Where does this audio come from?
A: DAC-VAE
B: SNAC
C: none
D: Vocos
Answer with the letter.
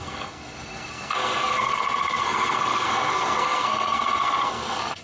B